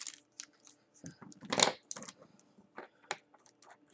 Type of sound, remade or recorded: recorded